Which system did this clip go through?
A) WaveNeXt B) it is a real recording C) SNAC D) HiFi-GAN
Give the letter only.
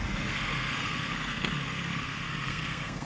C